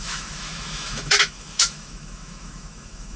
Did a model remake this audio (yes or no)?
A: yes